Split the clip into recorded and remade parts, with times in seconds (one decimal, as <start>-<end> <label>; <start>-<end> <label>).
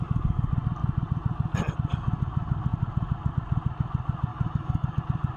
0.0-4.3 recorded; 4.3-5.0 remade; 5.0-5.4 recorded